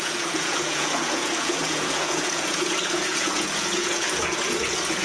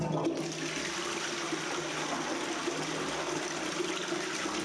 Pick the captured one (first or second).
second